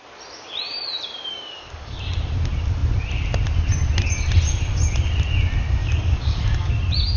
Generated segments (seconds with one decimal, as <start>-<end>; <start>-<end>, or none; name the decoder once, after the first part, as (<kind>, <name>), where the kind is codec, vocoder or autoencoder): 1.3-2.0 (codec, DAC); 5.8-6.7